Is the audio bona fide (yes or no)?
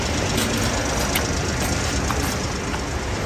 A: yes